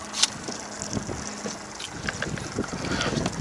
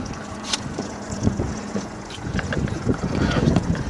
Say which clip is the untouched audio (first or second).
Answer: first